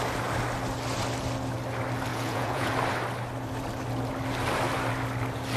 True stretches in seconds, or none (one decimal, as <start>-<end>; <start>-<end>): 0.0-2.1; 2.7-5.6